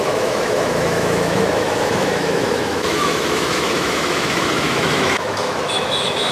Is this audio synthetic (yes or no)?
yes